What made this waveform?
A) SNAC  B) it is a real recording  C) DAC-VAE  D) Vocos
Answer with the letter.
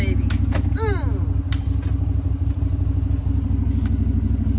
B